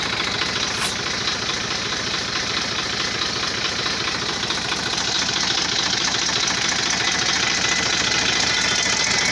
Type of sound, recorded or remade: recorded